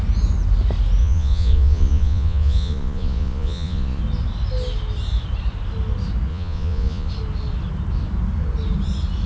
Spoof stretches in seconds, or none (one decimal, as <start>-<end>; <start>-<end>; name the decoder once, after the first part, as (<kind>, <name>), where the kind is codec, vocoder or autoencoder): 1.0-4.0 (vocoder, Vocos); 6.3-7.1